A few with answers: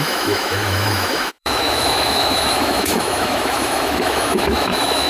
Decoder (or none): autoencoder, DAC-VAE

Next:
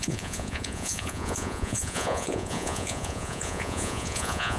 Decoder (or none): vocoder, Vocos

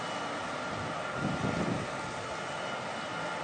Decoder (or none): none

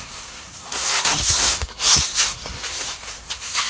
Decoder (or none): codec, SNAC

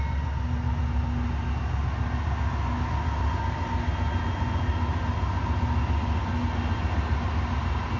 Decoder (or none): none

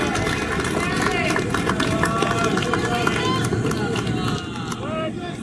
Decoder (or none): none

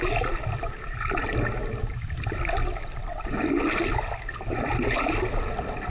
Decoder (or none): none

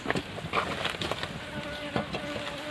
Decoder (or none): none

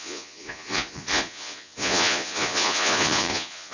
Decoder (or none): vocoder, Vocos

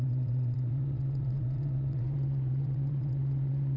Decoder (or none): vocoder, WaveNeXt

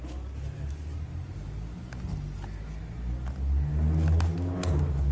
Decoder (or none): none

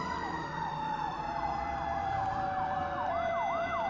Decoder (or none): vocoder, BigVGAN v2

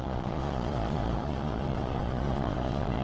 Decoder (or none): vocoder, Vocos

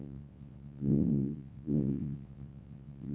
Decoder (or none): vocoder, WaveNeXt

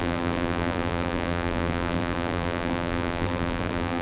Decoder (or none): vocoder, BigVGAN v2